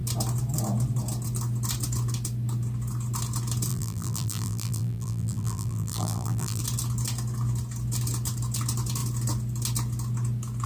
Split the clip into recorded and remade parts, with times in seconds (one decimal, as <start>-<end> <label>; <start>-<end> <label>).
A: 0.0-3.7 recorded; 3.7-6.6 remade; 6.6-10.7 recorded